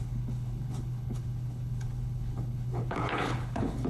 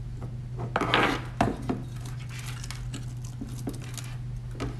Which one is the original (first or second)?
second